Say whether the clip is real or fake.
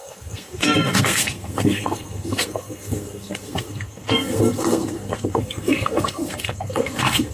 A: fake